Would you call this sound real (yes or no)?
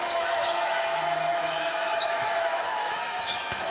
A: no